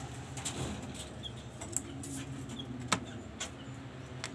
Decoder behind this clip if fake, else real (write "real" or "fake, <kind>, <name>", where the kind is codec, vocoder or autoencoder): real